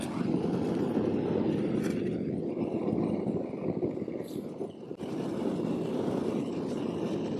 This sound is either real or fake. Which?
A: real